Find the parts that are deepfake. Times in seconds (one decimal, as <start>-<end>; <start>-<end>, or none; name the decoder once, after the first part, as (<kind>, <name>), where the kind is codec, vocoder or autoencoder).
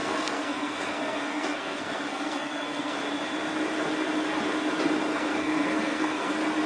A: 0.0-3.0 (codec, SNAC); 5.1-6.3